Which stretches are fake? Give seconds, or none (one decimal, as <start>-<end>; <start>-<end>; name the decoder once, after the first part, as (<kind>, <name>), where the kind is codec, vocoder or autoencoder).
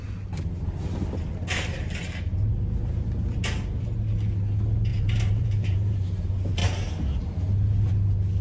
4.9-6.1 (vocoder, BigVGAN v2)